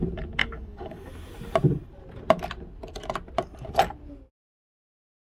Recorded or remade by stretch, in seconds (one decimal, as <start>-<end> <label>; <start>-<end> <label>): 0.0-0.4 recorded; 0.4-1.1 remade; 1.1-5.3 recorded